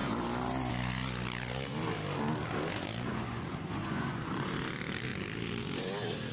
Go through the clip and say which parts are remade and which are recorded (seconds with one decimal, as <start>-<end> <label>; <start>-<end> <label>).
0.0-3.1 recorded; 3.1-4.5 remade; 4.5-6.3 recorded